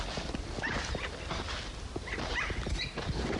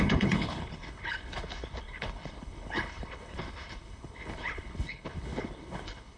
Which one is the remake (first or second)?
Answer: second